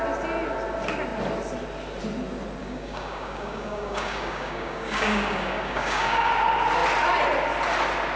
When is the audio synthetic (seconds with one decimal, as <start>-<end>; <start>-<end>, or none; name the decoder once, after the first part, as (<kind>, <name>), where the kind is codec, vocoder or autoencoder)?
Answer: 2.6-6.3 (codec, DAC)